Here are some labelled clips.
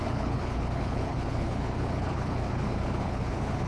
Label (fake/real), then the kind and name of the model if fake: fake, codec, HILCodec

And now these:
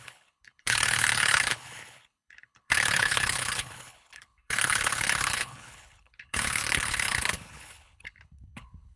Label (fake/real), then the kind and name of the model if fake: fake, codec, HILCodec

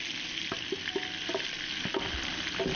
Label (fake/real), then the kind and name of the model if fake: real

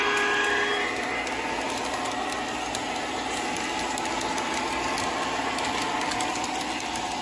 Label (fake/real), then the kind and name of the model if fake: real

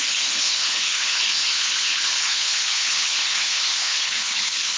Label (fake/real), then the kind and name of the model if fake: fake, codec, HILCodec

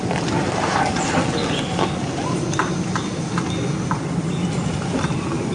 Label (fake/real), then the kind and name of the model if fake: real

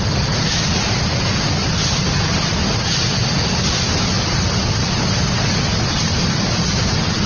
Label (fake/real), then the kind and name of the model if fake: real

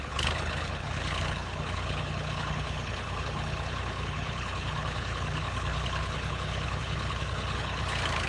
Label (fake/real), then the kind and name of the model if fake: fake, codec, HILCodec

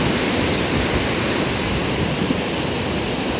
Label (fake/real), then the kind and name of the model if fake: real